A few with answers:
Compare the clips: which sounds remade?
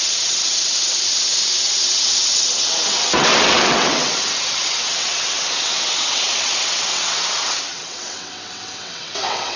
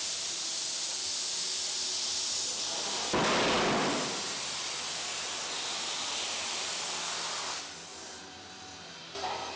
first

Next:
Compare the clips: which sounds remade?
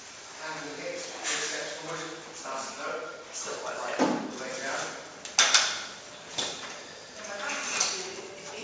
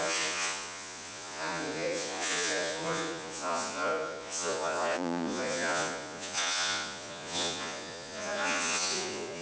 second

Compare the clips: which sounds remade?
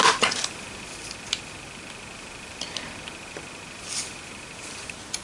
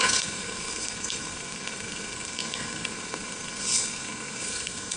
second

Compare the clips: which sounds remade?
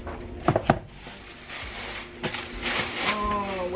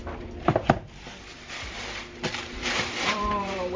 second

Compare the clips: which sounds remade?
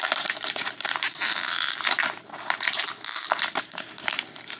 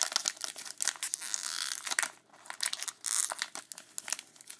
first